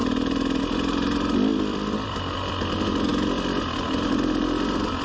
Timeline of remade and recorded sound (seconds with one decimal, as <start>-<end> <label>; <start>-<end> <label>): 0.0-0.6 remade; 0.6-1.5 recorded; 1.5-2.2 remade; 2.2-5.0 recorded